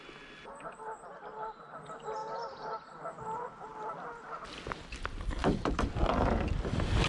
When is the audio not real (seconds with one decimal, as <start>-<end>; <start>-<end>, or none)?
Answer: 2.2-2.9; 5.4-5.9